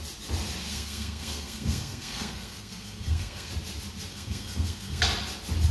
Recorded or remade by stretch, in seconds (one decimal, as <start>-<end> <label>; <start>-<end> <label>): 0.0-0.7 recorded; 0.7-3.5 remade; 3.5-4.1 recorded; 4.1-5.0 remade; 5.0-5.7 recorded